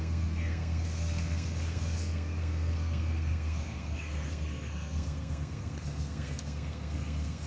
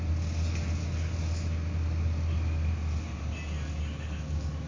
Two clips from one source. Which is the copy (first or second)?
first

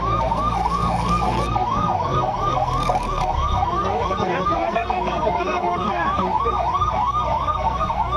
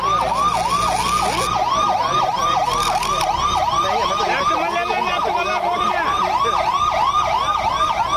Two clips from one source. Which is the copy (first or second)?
first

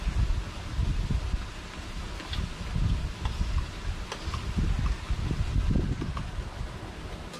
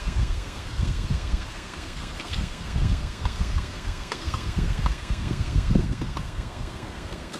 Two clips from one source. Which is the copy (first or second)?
second